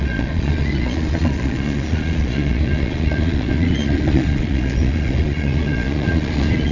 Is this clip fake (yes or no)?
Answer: yes